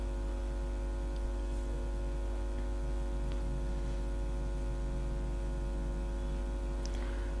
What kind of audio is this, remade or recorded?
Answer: recorded